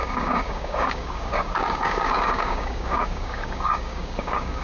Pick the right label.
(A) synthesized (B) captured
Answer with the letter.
A